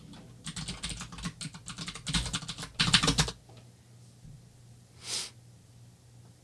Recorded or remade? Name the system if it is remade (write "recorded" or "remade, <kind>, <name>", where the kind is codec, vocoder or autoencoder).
recorded